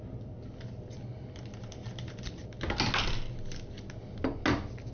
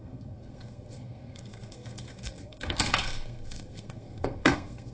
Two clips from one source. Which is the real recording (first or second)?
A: first